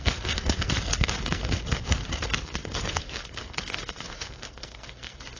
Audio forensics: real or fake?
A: fake